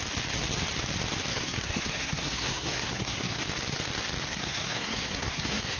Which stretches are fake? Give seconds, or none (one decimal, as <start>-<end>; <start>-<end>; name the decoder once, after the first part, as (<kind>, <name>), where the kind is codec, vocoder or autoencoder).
1.3-3.4 (codec, SNAC); 4.3-5.8